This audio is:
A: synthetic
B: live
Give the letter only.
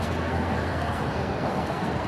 A